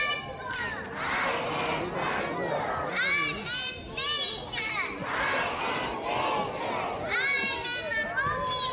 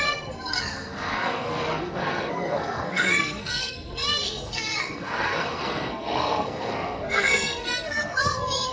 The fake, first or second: second